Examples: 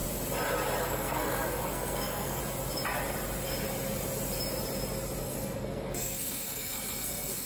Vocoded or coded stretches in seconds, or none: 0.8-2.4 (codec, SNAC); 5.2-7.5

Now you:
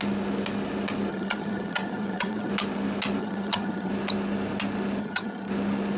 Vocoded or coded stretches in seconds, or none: 1.1-2.5 (vocoder, HiFi-GAN); 3.2-3.9; 5.0-5.5